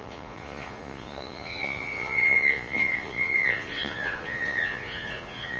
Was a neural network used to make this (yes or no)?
yes